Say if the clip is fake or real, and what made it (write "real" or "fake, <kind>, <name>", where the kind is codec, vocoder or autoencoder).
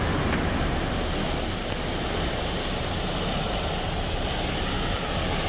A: real